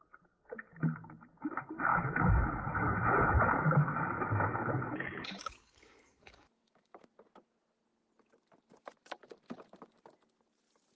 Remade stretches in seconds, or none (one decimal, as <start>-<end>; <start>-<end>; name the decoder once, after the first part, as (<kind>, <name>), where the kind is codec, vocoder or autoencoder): 1.9-7.0 (autoencoder, DAC-VAE)